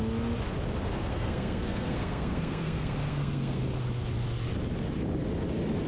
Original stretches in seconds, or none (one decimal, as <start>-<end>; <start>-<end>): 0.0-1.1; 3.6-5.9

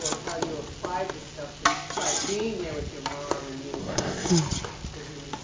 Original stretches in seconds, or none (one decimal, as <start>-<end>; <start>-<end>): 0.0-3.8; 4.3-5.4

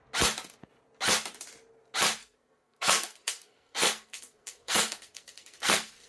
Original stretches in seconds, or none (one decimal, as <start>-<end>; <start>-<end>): 0.0-2.2

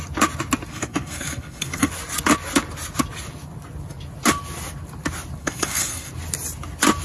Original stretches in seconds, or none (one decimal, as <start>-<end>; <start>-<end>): 0.0-0.7; 1.9-5.4; 6.1-7.0